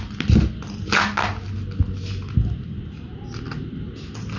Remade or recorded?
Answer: recorded